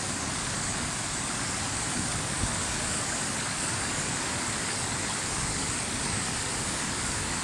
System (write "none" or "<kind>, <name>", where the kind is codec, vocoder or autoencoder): codec, DAC